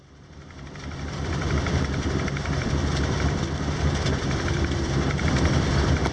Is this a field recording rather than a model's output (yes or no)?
no